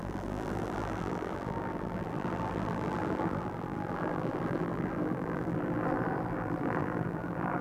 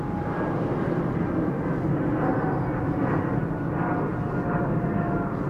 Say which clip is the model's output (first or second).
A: first